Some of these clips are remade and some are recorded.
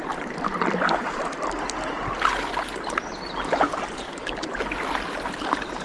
recorded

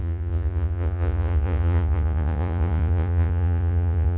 remade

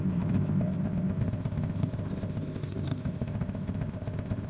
remade